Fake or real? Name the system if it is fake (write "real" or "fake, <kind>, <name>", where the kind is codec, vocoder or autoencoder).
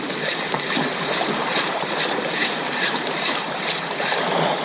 fake, vocoder, BigVGAN v2